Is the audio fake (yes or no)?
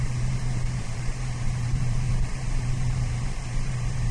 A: yes